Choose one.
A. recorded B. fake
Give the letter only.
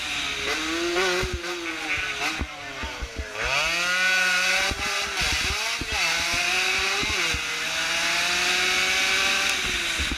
A